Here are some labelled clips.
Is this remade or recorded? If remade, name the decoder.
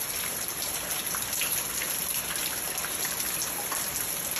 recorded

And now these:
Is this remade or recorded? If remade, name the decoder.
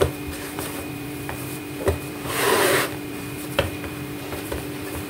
remade, vocoder, BigVGAN v2